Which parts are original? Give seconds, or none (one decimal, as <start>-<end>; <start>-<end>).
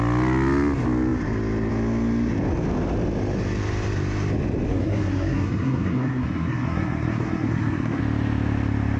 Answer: 0.0-4.7; 8.0-9.0